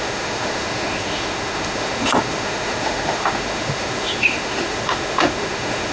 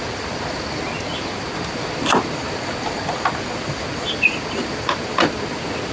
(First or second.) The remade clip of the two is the first